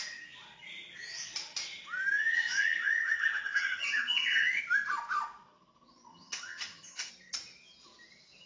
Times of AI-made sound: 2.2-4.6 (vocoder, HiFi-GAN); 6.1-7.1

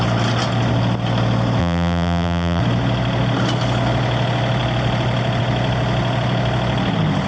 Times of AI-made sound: 1.6-2.6 (vocoder, BigVGAN v2)

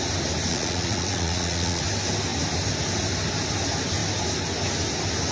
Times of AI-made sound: 0.5-1.8 (vocoder, Vocos)

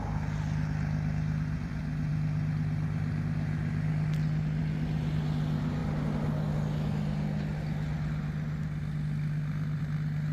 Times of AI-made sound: none

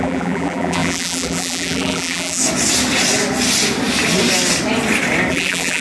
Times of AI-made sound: 0.0-2.4 (vocoder, BigVGAN v2); 5.3-5.8

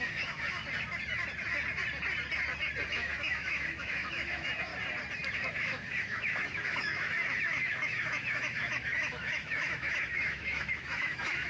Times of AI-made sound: 0.0-0.6 (autoencoder, DAC-VAE); 2.9-4.7; 5.3-11.5

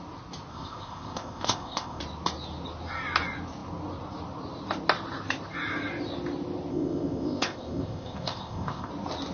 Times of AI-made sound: 0.5-2.0 (codec, ZipCodec); 6.7-8.9